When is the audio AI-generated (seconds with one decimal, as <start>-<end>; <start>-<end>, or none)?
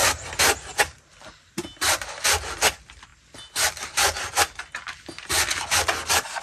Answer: none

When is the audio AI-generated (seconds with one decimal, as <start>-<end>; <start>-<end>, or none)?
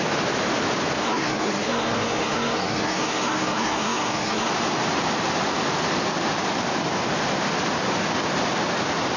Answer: 1.0-4.5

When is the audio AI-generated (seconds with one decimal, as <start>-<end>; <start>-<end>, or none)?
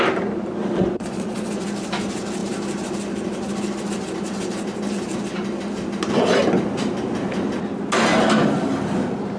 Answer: 0.6-1.5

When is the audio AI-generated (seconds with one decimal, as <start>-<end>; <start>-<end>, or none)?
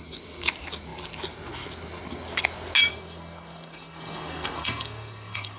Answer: 2.9-5.6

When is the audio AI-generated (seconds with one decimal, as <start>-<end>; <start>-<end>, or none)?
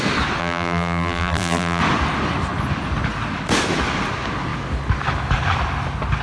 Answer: 0.4-1.8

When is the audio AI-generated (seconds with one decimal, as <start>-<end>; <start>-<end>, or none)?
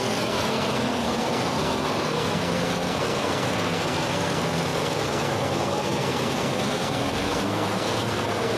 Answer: 0.0-8.6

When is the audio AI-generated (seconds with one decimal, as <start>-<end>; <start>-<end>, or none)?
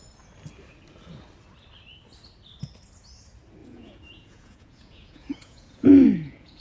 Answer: 3.6-6.6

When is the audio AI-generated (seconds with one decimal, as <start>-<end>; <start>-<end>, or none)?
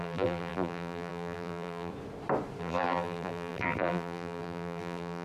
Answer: 0.0-1.9; 2.6-5.2